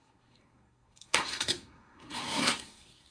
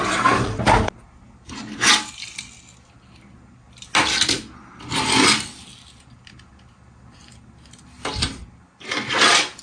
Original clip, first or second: second